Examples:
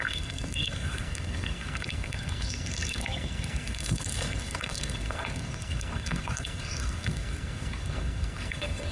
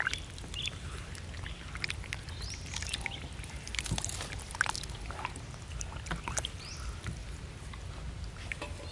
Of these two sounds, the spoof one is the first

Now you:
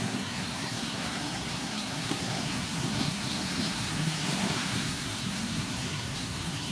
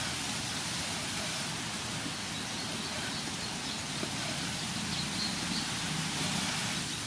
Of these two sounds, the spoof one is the first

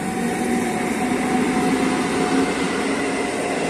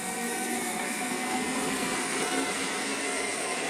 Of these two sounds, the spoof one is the second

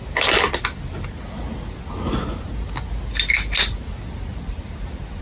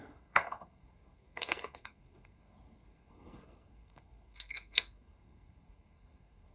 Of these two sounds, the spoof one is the second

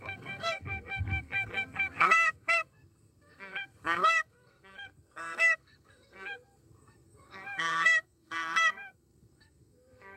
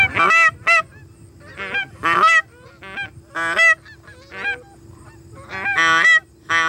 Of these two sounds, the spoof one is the first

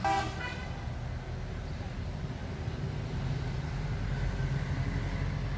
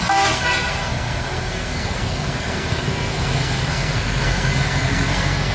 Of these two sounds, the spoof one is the second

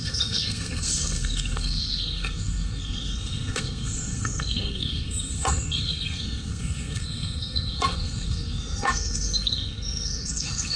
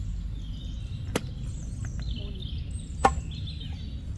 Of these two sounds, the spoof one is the first